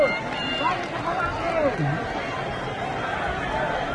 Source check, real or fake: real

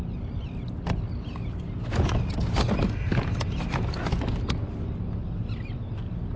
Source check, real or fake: real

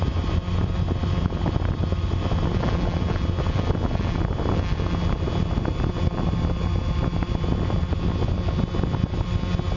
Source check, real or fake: real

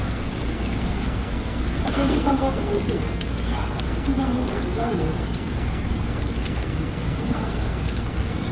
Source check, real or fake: fake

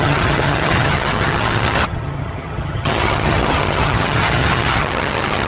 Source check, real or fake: fake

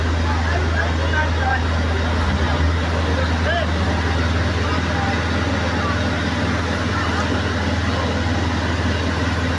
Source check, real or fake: real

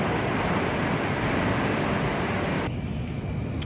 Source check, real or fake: real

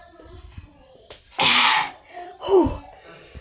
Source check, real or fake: fake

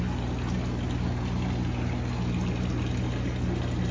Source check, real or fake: real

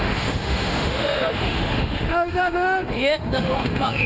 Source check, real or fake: fake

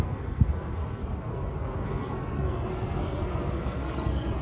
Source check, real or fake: fake